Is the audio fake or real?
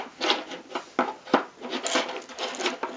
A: real